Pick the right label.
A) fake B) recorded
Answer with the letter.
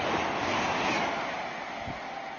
B